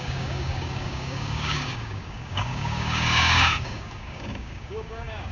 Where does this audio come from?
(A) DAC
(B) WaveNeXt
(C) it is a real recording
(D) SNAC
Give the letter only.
A